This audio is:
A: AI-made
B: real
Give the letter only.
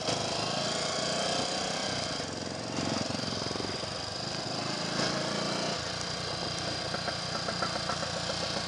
B